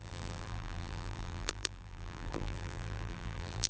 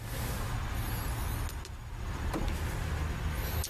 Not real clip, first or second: first